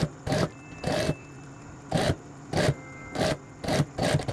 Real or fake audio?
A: real